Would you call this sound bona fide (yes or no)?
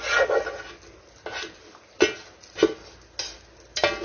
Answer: yes